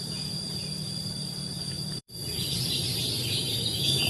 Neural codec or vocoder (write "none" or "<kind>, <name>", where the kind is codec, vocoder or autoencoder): vocoder, BigVGAN v2